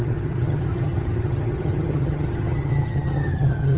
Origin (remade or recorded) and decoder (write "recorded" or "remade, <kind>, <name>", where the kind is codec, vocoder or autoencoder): remade, vocoder, HiFi-GAN